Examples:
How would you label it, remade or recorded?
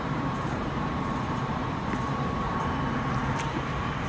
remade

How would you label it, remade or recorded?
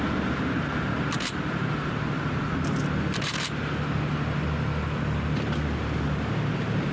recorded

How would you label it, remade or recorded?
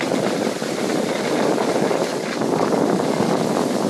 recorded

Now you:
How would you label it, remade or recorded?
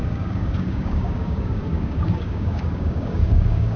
remade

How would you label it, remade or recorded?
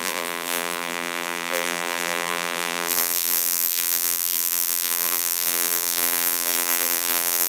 remade